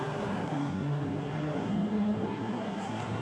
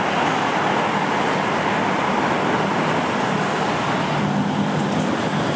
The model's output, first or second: first